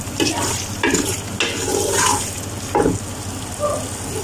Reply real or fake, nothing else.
real